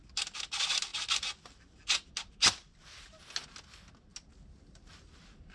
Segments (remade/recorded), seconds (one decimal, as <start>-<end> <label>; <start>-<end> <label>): 0.0-5.5 recorded